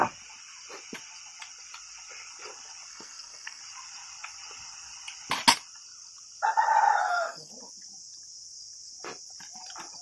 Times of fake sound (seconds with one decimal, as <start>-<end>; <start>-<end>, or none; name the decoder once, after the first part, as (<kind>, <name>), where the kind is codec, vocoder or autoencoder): 2.9-3.6 (codec, SNAC); 7.0-7.5